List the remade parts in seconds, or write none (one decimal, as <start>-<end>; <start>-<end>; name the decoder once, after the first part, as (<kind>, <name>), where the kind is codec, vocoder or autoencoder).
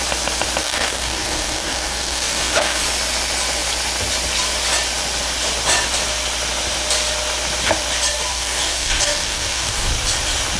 0.6-2.8 (codec, DAC); 8.3-9.9